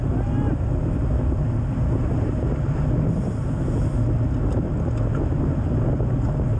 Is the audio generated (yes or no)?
no